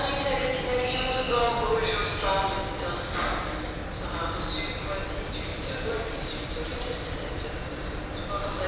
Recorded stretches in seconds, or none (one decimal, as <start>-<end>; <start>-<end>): 0.0-5.5